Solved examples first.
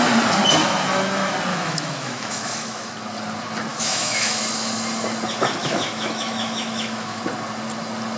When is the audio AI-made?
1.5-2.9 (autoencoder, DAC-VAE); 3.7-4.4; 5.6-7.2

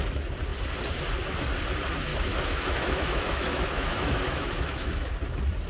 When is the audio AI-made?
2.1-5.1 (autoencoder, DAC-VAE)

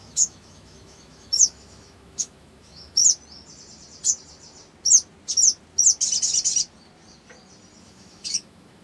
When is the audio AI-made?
0.0-3.0 (autoencoder, DAC-VAE); 7.8-8.8